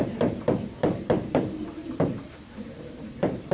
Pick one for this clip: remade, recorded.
remade